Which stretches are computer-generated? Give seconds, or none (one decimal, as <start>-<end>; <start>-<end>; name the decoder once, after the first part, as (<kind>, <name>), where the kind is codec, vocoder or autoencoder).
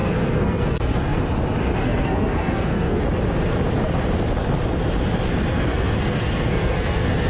0.0-1.2 (codec, SNAC); 1.8-3.0; 5.5-7.3